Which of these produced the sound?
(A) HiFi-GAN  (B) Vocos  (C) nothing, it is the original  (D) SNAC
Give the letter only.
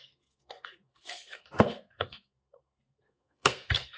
D